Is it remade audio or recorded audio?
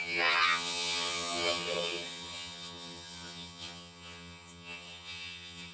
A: remade